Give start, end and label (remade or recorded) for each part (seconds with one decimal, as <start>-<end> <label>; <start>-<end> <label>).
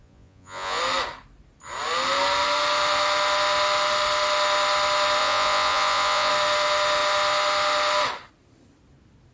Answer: 0.0-0.8 remade; 0.8-5.2 recorded; 5.2-6.3 remade; 6.3-9.3 recorded